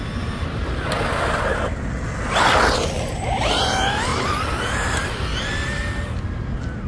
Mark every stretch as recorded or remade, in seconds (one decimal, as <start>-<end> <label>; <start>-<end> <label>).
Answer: 0.0-4.1 recorded; 4.1-5.2 remade; 5.2-6.9 recorded